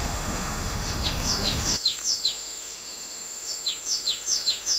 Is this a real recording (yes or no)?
no